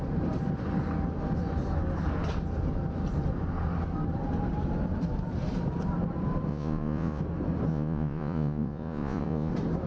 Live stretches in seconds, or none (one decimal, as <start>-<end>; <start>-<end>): 0.0-6.5; 7.2-7.7; 9.5-9.9